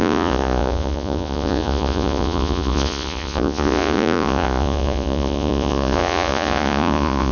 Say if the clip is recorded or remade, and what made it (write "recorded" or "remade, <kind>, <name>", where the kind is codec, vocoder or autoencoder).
remade, vocoder, Vocos